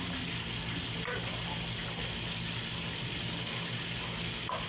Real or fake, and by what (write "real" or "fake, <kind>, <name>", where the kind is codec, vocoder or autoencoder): real